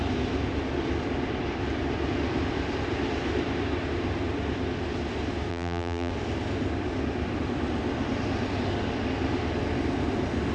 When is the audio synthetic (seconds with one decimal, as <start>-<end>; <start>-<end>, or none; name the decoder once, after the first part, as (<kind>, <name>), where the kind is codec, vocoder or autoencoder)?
5.5-6.1 (vocoder, BigVGAN v2)